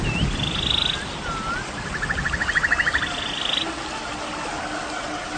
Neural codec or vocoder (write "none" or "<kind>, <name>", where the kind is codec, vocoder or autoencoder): none